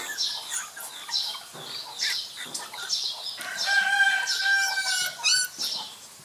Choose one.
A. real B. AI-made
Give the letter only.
A